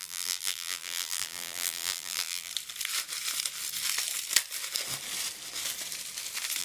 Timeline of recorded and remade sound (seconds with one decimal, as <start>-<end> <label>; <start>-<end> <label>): 0.0-2.5 remade; 2.5-6.6 recorded